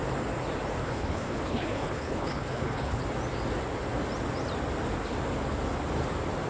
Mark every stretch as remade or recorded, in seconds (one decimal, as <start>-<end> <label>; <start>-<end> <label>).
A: 0.0-0.8 recorded; 0.8-3.0 remade; 3.0-6.5 recorded